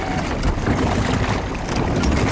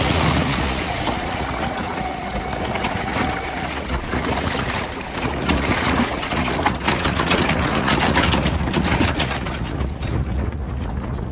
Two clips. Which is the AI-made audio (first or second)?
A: second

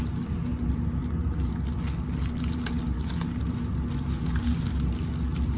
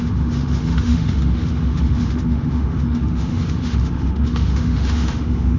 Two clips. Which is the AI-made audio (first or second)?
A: second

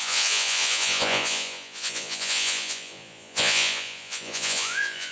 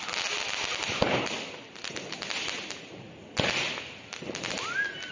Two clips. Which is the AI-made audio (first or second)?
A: first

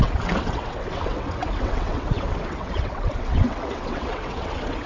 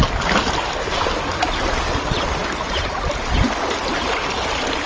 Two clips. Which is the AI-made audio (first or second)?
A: first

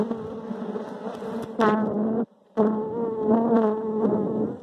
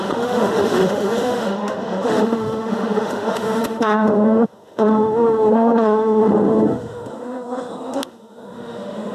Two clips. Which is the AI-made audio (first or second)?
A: second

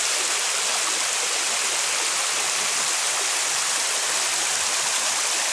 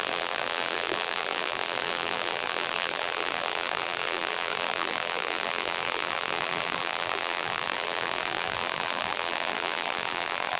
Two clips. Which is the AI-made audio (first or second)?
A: second